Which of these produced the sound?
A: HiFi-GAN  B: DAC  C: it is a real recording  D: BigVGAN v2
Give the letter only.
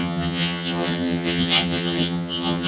A